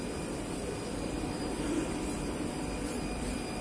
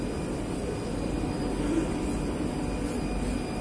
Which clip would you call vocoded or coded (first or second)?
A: first